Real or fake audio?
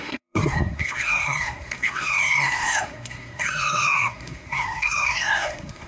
fake